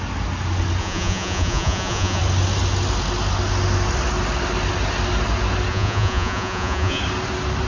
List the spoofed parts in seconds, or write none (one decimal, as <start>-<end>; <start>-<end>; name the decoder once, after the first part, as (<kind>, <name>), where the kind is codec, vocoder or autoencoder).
0.8-2.2 (vocoder, Vocos); 5.7-7.0